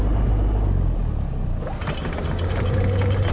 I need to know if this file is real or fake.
real